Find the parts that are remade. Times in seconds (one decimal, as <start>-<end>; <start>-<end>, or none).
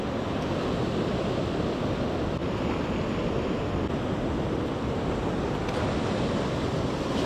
none